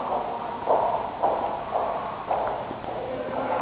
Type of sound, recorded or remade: recorded